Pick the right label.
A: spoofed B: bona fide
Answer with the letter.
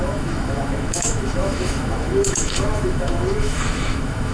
A